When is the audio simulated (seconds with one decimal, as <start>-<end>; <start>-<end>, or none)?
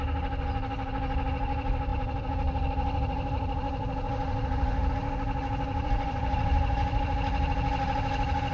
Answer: 1.9-4.9; 5.7-7.0